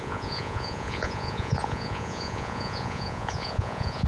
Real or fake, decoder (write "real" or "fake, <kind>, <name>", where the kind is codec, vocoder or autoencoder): fake, vocoder, Vocos